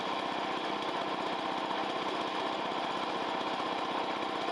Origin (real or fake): real